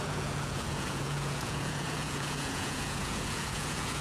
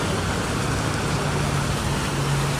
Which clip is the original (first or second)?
second